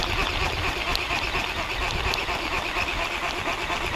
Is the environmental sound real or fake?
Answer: real